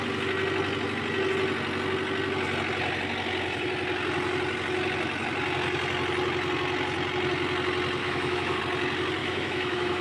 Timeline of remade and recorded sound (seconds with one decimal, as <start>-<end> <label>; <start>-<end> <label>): 0.0-8.0 recorded; 8.0-8.6 remade; 8.6-9.2 recorded; 9.2-10.0 remade